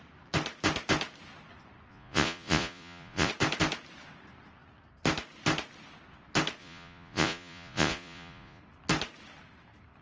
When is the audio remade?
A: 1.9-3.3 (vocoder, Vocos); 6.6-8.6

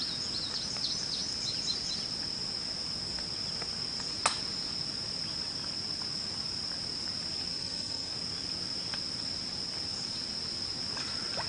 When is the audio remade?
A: 7.5-8.1 (codec, SNAC)

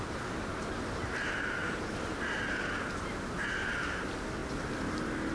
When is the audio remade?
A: none

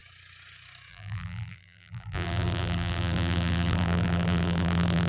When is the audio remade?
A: 0.9-5.1 (vocoder, BigVGAN v2)

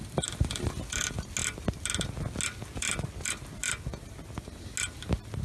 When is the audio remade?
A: none